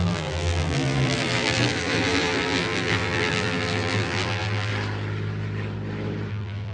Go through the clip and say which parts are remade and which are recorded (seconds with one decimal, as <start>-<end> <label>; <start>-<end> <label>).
0.0-4.7 remade; 4.7-6.3 recorded; 6.3-6.7 remade